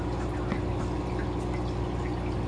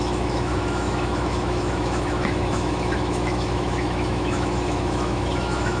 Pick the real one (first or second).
first